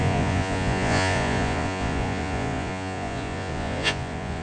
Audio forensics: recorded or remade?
remade